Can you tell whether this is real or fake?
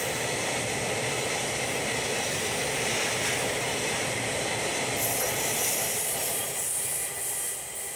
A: real